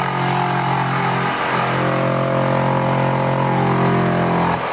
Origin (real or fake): real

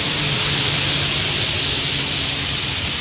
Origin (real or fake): real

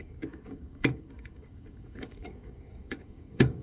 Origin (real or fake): fake